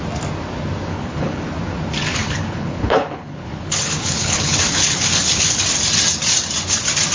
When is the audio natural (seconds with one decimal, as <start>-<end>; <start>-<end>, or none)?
0.0-0.9; 1.4-2.2; 5.6-7.1